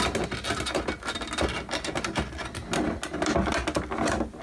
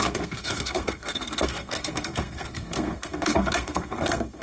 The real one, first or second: first